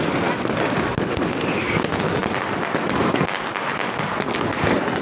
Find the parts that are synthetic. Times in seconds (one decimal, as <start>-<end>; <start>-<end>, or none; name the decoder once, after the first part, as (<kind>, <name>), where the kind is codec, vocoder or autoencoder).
none